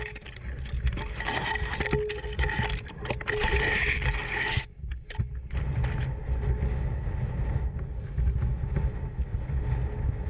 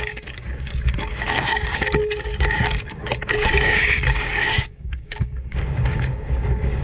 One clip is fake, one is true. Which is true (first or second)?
first